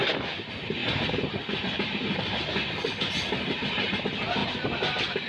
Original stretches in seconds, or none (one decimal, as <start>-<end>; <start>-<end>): 0.0-0.8; 4.0-4.4